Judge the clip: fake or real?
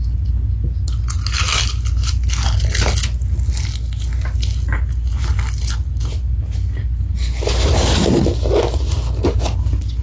real